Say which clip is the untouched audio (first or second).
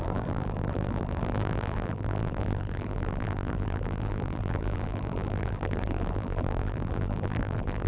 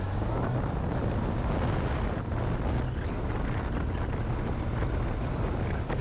second